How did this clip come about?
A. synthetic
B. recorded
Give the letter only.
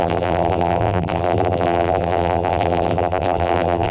A